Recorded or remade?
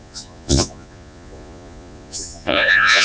remade